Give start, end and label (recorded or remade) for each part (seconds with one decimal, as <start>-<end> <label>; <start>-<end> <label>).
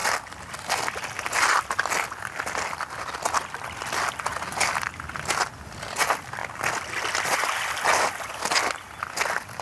0.0-9.6 recorded